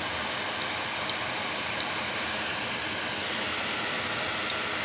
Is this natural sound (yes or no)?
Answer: yes